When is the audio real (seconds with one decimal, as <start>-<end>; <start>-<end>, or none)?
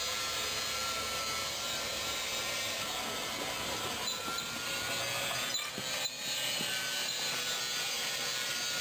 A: 0.0-8.8